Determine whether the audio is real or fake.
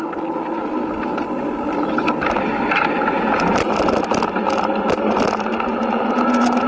real